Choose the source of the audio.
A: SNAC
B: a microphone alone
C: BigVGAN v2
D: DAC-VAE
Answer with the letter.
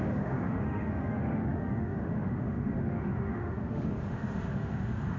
D